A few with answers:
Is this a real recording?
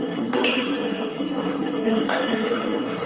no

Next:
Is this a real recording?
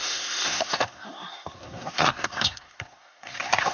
no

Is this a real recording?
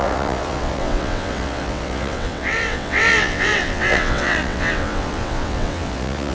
no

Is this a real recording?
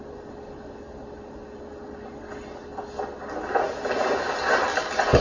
yes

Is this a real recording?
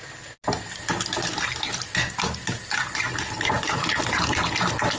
yes